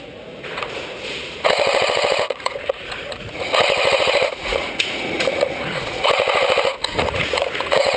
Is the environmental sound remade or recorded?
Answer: remade